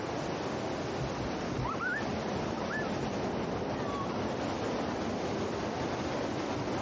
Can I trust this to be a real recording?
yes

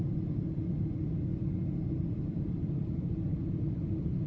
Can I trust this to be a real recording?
yes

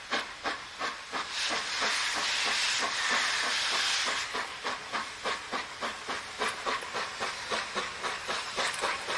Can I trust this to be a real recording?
yes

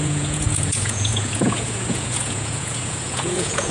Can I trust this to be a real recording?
no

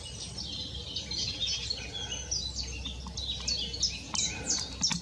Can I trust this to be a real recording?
yes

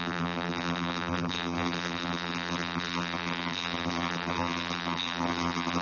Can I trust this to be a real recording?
no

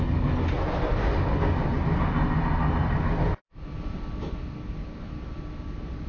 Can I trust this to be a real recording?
yes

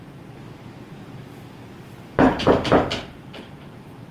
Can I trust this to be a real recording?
no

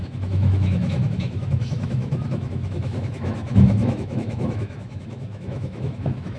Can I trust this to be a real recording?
no